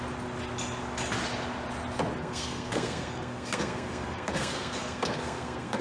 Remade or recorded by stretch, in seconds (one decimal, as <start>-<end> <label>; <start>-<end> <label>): 0.0-2.2 recorded; 2.2-5.8 remade